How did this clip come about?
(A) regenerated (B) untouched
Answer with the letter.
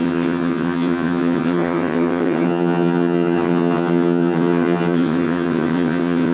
A